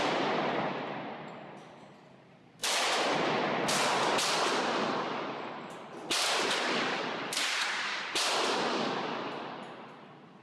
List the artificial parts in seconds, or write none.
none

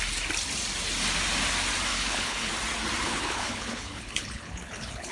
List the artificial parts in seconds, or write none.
1.9-2.5; 3.0-5.1

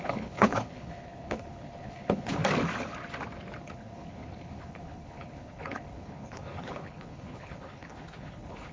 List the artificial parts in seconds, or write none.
0.0-2.4; 3.6-8.7

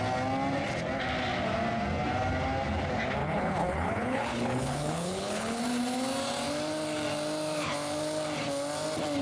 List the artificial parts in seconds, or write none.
3.2-5.6